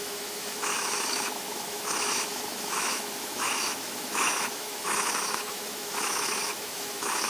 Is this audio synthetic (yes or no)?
yes